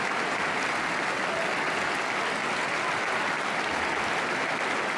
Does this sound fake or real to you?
real